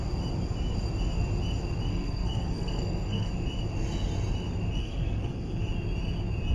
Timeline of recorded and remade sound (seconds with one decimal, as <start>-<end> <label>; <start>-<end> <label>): 0.0-1.9 recorded; 1.9-3.3 remade; 3.3-4.8 recorded; 4.8-5.6 remade; 5.6-6.5 recorded